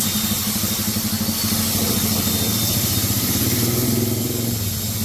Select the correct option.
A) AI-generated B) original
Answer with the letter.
B